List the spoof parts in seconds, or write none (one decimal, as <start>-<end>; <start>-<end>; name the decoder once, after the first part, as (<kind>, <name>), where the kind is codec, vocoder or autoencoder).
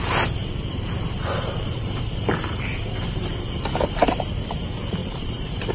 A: 0.4-2.0 (vocoder, BigVGAN v2); 3.7-4.3; 5.0-5.7